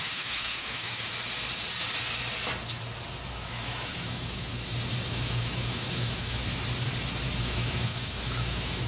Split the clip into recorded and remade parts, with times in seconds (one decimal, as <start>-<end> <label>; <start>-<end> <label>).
0.0-1.1 remade; 1.1-3.3 recorded; 3.3-4.5 remade; 4.5-5.1 recorded; 5.1-6.4 remade; 6.4-7.4 recorded; 7.4-8.9 remade